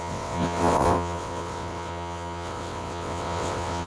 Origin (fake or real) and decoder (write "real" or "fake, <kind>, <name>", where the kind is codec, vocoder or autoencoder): fake, vocoder, WaveNeXt